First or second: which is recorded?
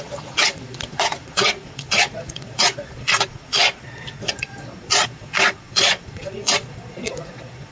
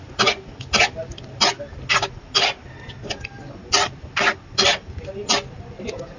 second